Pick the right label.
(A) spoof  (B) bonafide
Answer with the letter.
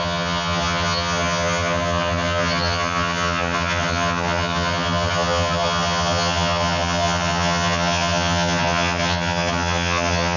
A